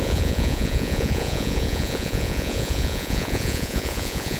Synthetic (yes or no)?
yes